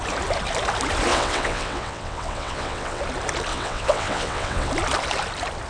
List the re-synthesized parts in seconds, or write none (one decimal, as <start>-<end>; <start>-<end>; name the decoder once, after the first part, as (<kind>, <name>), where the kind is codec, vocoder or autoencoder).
1.1-3.0 (vocoder, WaveNeXt); 3.5-4.7